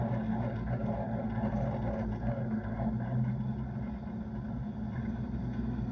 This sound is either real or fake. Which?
real